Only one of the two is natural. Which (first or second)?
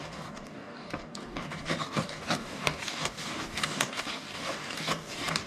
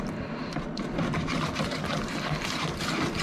second